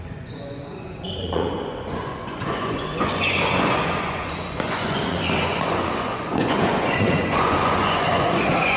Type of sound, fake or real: fake